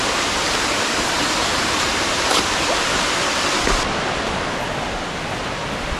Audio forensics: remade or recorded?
recorded